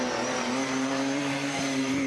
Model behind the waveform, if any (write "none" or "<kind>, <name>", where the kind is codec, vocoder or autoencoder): vocoder, BigVGAN v2